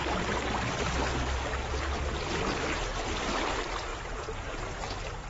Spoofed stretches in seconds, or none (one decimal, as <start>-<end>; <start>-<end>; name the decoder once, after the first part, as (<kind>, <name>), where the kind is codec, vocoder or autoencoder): none